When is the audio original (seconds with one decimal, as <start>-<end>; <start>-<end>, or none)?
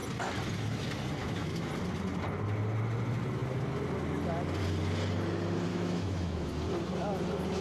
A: 0.0-1.2; 1.7-5.7; 6.5-7.6